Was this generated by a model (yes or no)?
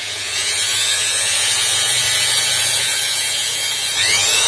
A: yes